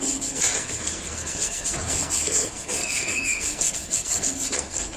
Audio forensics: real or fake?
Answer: fake